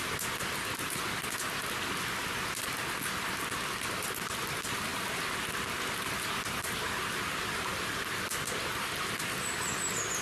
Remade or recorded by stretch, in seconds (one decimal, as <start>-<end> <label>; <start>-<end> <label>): 0.0-10.2 recorded